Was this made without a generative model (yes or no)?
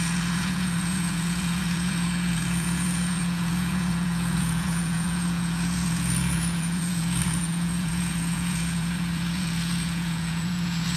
no